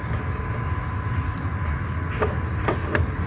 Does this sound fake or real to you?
real